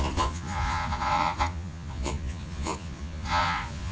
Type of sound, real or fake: fake